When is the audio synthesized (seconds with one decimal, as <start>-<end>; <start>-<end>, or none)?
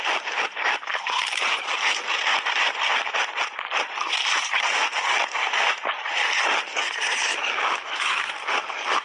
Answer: 7.3-8.3